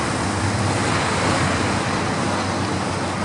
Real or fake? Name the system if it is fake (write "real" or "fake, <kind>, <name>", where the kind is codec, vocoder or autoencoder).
real